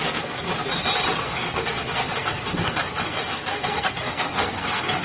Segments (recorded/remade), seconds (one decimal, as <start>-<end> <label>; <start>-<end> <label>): 0.0-0.5 remade; 0.5-1.2 recorded; 1.2-5.0 remade

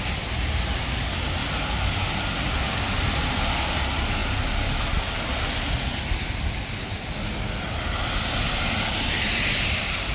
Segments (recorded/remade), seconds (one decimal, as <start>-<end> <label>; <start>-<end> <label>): 0.0-10.1 recorded

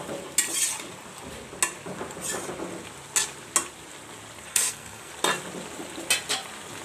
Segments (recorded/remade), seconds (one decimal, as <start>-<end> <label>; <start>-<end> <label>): 0.0-4.5 recorded; 4.5-5.1 remade; 5.1-6.8 recorded